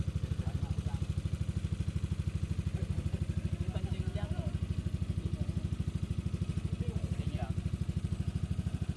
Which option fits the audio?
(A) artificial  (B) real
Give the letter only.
B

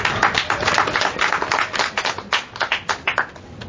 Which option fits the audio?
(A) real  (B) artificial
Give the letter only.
A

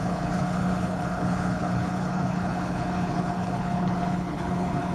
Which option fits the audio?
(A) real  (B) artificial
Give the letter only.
B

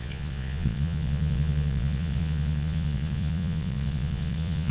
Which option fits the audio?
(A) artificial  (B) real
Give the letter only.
A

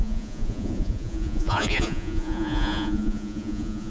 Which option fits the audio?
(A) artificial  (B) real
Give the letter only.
A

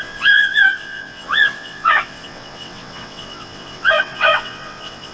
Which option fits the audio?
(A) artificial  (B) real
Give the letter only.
A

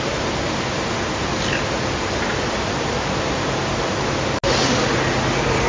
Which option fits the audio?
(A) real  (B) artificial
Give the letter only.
A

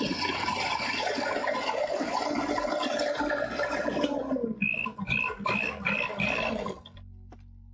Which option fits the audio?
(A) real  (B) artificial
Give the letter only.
B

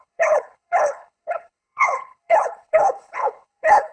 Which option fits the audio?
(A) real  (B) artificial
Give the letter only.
B